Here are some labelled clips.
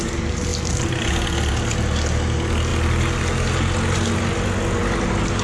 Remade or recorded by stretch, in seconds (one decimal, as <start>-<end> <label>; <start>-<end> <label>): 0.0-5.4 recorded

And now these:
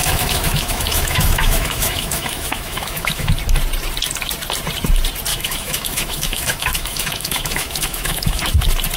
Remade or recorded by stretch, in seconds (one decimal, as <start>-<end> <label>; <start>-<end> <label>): 0.0-3.3 remade; 3.3-5.3 recorded; 5.3-8.4 remade; 8.4-9.0 recorded

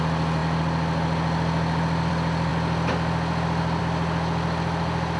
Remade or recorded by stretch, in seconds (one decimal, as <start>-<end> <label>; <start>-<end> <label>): 0.0-5.2 recorded